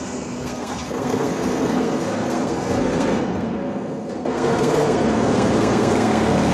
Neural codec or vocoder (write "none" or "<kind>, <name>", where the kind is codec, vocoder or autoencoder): codec, SNAC